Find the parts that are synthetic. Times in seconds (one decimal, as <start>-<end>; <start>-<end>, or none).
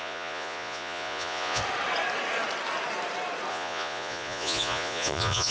0.0-1.6; 3.5-5.5